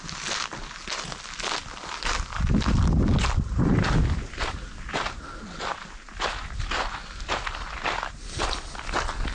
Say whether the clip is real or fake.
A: real